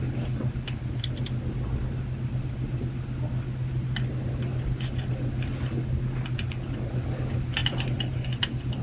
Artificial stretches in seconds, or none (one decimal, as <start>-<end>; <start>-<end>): none

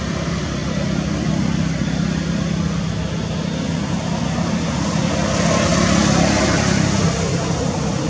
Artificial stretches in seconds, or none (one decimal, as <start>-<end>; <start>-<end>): none

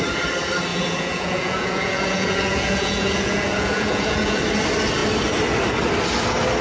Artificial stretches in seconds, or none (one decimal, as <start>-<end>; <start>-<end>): 0.7-4.4

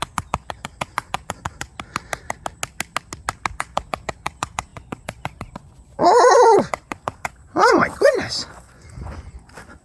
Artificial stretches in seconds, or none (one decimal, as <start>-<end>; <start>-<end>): 0.0-1.7; 3.5-9.8

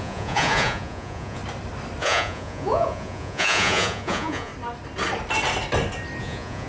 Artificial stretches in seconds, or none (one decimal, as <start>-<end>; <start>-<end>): 0.0-1.4; 2.0-4.5; 6.2-6.7

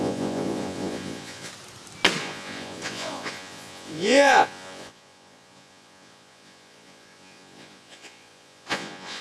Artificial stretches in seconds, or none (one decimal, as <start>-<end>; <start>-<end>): 0.0-1.5; 2.2-9.2